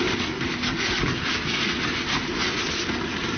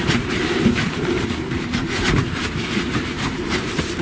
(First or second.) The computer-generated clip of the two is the second